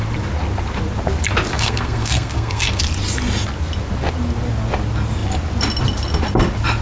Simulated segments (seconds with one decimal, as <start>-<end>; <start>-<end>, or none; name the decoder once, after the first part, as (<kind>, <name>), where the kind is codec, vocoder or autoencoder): 1.5-2.8 (codec, SNAC)